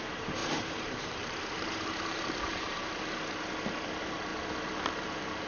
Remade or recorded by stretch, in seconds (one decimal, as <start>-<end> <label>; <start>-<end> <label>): 0.0-0.4 recorded; 0.4-2.9 remade; 2.9-5.5 recorded